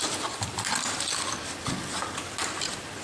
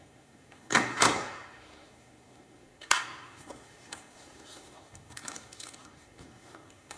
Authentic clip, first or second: first